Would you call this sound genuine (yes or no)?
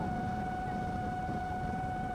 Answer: no